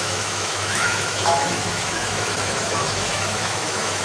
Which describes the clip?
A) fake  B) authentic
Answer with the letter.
A